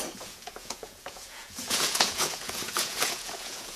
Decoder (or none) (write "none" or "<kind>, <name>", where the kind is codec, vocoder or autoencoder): vocoder, Vocos